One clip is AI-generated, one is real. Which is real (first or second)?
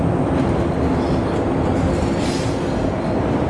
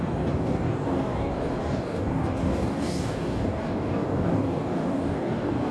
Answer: first